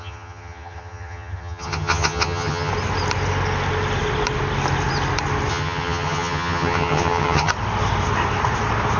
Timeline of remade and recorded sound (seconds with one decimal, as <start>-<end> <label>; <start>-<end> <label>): 0.0-2.7 remade; 2.7-5.5 recorded; 5.5-7.5 remade; 7.5-9.0 recorded